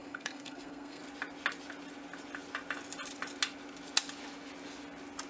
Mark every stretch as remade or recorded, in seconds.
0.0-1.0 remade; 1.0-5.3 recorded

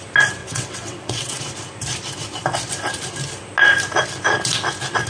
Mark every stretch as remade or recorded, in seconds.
0.0-0.4 recorded; 0.4-1.4 remade; 1.4-5.1 recorded

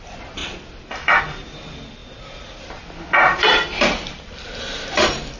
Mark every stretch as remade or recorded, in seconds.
0.0-5.4 recorded

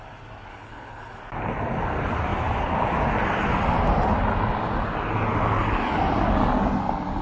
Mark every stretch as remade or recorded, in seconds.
0.0-0.5 recorded; 0.5-1.2 remade; 1.2-7.2 recorded

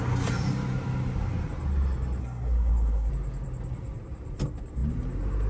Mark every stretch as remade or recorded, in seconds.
0.0-2.2 recorded; 2.2-3.1 remade; 3.1-5.5 recorded

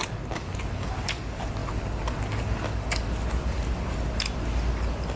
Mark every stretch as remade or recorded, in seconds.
0.0-5.2 recorded

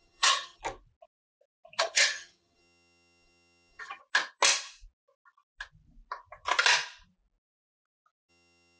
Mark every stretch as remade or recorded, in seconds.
0.0-0.6 remade; 0.6-1.8 recorded; 1.8-4.0 remade; 4.0-8.3 recorded; 8.3-8.8 remade

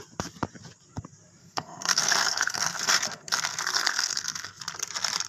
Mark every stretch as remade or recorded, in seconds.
0.0-1.4 recorded; 1.4-4.6 remade; 4.6-5.3 recorded